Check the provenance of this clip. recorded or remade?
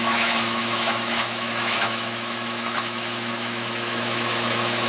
remade